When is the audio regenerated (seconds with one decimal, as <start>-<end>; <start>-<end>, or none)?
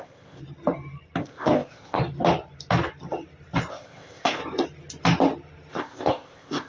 0.0-0.4; 1.2-2.0; 3.7-4.4; 5.7-6.7